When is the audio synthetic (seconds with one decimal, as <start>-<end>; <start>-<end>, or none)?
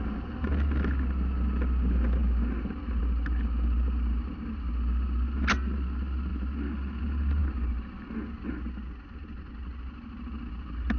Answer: none